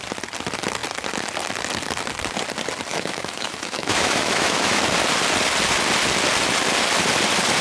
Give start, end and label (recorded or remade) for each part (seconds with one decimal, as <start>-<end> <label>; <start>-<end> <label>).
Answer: 0.0-2.9 recorded; 2.9-4.8 remade; 4.8-7.6 recorded